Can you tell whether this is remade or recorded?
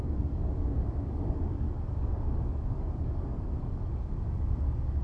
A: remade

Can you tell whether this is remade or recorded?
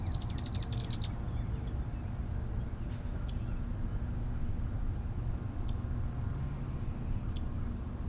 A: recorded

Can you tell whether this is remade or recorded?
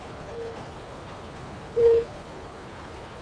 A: remade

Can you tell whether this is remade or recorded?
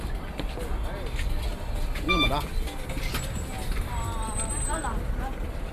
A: recorded